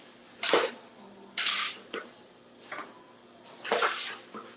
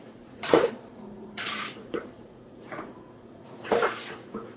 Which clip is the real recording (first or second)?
first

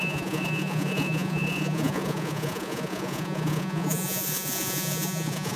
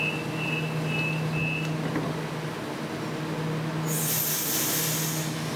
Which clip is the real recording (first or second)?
second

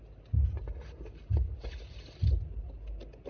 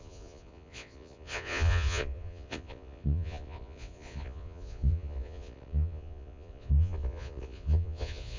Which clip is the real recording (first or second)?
first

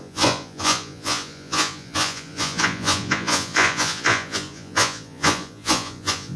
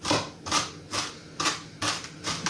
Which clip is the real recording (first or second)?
second